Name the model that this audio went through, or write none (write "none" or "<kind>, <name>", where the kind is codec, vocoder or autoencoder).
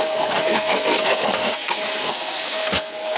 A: codec, SNAC